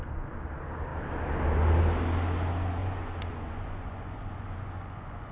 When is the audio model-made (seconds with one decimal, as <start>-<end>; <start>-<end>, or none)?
2.8-5.3